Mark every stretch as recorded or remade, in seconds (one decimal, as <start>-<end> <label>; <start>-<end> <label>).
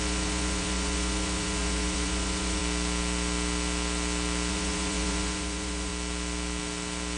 0.0-2.6 remade; 2.6-4.5 recorded; 4.5-5.9 remade; 5.9-7.2 recorded